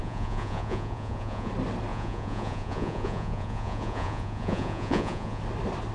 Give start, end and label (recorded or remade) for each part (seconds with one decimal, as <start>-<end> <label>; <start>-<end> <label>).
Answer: 0.0-1.5 remade; 1.5-1.9 recorded; 1.9-5.4 remade; 5.4-5.9 recorded